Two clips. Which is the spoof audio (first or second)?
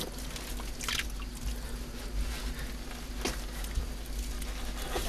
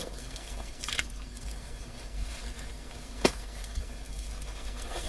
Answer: second